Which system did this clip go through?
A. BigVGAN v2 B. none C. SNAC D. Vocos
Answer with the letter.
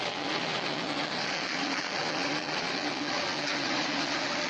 D